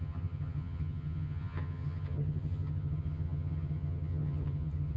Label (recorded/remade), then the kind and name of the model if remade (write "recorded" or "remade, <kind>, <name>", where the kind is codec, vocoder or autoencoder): remade, vocoder, HiFi-GAN